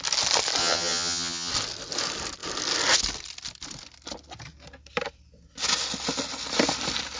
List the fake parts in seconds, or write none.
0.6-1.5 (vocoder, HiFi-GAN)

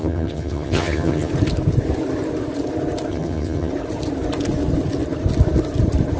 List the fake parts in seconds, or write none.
0.0-1.3 (vocoder, HiFi-GAN); 3.1-3.7

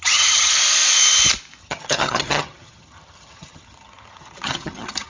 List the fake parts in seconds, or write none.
0.0-0.6 (vocoder, HiFi-GAN); 1.6-5.1

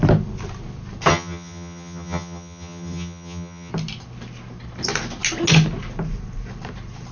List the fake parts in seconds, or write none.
1.1-3.7 (vocoder, HiFi-GAN)

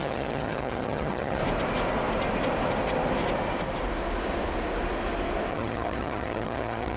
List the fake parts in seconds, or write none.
0.0-1.4 (vocoder, HiFi-GAN); 5.5-7.0